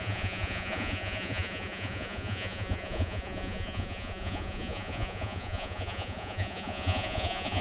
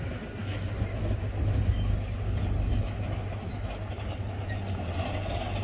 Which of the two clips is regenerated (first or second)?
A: first